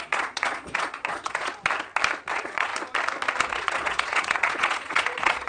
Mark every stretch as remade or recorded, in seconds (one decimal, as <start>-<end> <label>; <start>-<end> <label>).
0.0-1.5 remade; 1.5-2.3 recorded; 2.3-2.7 remade; 2.7-3.5 recorded; 3.5-5.5 remade